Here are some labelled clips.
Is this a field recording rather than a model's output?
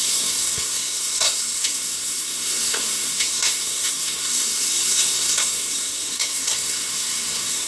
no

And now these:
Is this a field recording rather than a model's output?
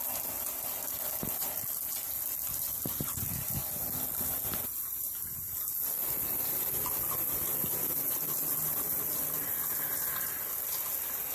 yes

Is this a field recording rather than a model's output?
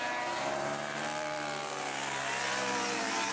yes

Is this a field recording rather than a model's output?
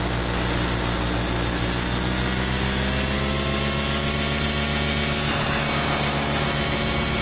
yes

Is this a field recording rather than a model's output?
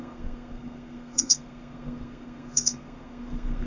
no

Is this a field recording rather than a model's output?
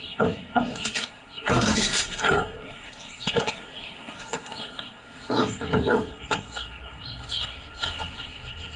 no